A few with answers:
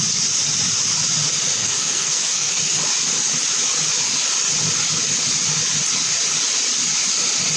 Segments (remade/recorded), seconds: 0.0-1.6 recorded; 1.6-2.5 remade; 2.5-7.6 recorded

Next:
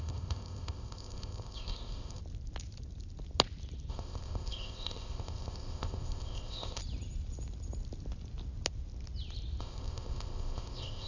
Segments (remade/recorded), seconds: 0.0-2.2 remade; 2.2-3.9 recorded; 3.9-6.8 remade; 6.8-9.6 recorded; 9.6-11.1 remade